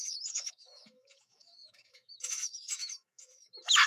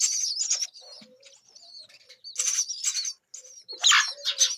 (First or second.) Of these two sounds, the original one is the second